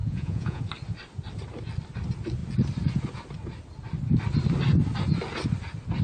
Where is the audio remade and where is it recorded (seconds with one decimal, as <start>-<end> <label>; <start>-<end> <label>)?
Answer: 0.0-0.6 remade; 0.6-6.0 recorded

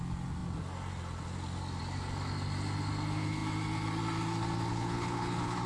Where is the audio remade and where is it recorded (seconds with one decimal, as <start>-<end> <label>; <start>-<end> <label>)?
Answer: 0.0-4.7 recorded; 4.7-5.7 remade

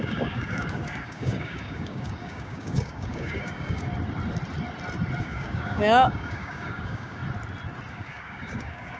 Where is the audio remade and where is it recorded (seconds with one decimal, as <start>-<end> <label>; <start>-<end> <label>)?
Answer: 0.0-3.9 remade; 3.9-5.2 recorded; 5.2-7.2 remade; 7.2-7.9 recorded; 7.9-9.0 remade

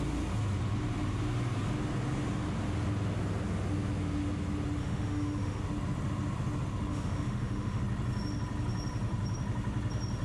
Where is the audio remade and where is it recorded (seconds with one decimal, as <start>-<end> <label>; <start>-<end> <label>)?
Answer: 0.0-4.8 recorded; 4.8-5.6 remade; 5.6-6.9 recorded; 6.9-7.8 remade; 7.8-10.2 recorded

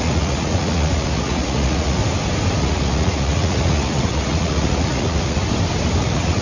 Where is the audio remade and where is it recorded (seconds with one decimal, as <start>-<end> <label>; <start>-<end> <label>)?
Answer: 0.0-2.0 remade; 2.0-2.6 recorded; 2.6-5.4 remade; 5.4-6.0 recorded; 6.0-6.4 remade

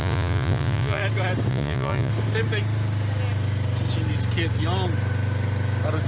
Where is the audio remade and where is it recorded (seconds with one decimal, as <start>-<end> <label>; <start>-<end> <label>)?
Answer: 0.0-1.0 remade; 1.0-1.5 recorded; 1.5-2.1 remade; 2.1-6.1 recorded

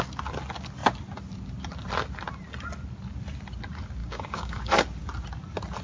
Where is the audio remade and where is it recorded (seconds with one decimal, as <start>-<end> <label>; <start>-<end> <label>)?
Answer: 0.0-4.0 recorded; 4.0-4.7 remade; 4.7-5.8 recorded

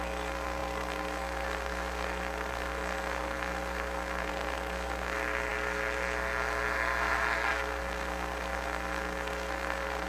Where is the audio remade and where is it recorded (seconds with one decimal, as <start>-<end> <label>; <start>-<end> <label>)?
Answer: 0.0-10.1 remade